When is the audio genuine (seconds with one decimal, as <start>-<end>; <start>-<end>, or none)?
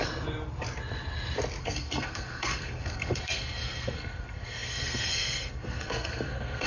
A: 0.0-1.6